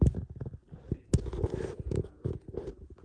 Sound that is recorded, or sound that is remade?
recorded